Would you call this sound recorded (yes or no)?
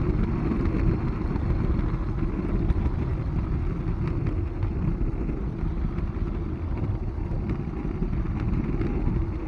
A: yes